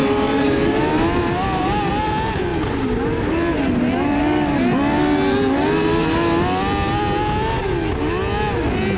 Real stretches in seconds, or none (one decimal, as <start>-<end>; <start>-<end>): 1.9-9.0